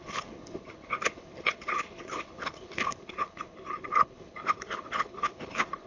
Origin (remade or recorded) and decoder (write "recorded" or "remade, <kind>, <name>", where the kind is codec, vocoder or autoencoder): remade, codec, HILCodec